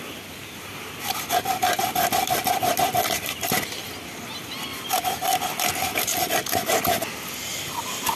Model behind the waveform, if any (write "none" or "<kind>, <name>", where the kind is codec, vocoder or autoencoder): none